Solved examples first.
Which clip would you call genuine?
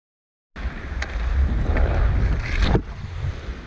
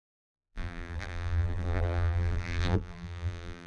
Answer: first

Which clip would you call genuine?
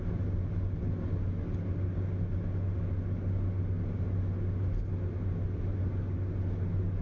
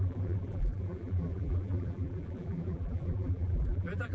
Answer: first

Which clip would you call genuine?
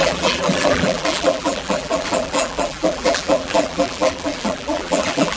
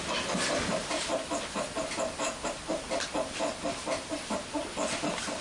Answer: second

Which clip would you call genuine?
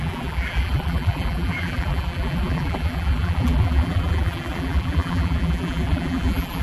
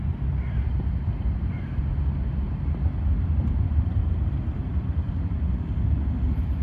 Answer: second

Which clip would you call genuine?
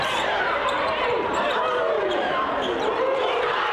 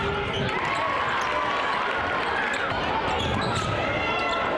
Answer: second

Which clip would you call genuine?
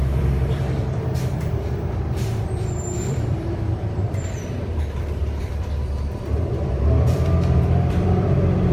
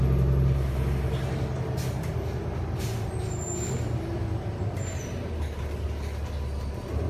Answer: second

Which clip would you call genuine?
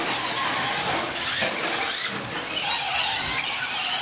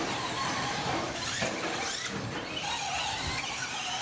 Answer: first